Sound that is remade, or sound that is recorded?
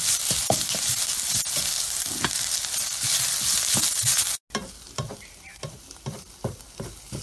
recorded